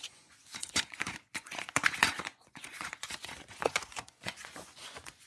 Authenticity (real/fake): fake